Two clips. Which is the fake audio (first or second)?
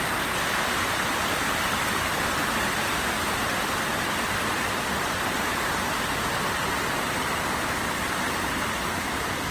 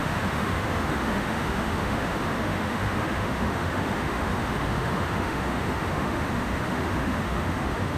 second